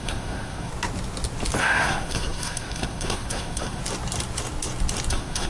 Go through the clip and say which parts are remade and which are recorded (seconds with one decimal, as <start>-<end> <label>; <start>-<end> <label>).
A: 0.0-0.7 remade; 0.7-1.6 recorded; 1.6-3.8 remade; 3.8-5.1 recorded; 5.1-5.5 remade